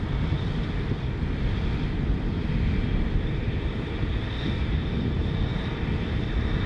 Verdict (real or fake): real